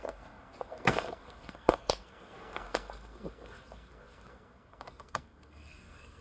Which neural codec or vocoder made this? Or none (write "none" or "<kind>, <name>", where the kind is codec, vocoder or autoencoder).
codec, SNAC